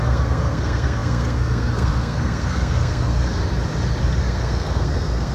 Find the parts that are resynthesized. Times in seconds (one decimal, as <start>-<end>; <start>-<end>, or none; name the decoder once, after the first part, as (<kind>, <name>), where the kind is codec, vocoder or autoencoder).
0.0-3.4 (codec, SNAC); 4.2-5.3